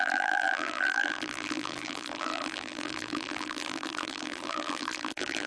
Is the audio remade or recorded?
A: remade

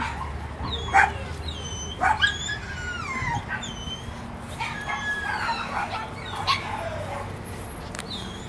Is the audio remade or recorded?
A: recorded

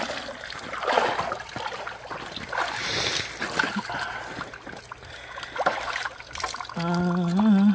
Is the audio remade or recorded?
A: recorded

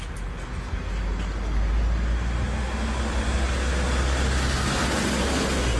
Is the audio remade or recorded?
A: recorded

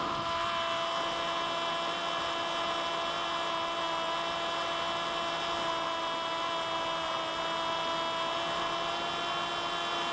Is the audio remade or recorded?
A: recorded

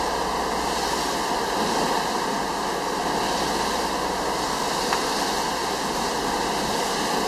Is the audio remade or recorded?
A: recorded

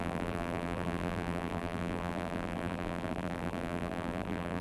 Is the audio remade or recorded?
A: remade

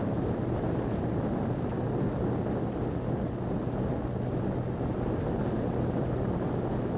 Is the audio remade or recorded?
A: recorded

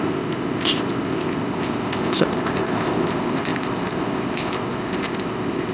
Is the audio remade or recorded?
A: remade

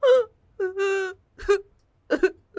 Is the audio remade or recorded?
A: recorded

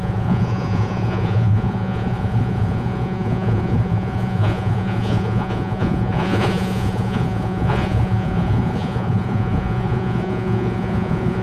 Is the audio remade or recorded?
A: remade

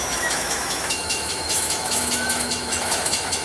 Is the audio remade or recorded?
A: remade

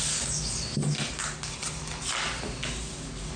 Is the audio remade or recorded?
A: recorded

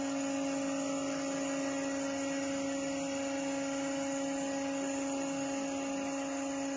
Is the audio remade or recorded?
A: recorded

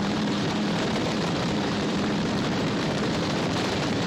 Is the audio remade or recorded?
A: remade